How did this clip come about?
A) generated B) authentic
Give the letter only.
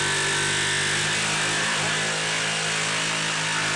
B